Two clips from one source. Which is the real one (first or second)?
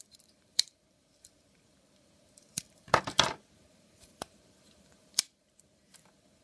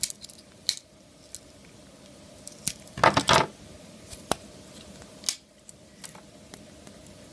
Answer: second